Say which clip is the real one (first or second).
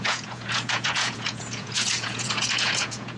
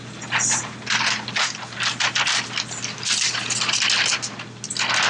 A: second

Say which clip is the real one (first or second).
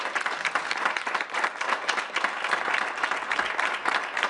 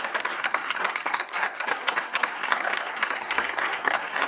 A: first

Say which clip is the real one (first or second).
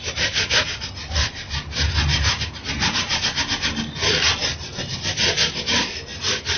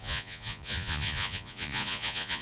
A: first